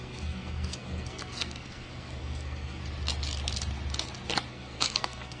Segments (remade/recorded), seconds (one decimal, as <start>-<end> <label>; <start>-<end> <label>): 0.0-2.8 remade; 2.8-4.5 recorded; 4.5-5.4 remade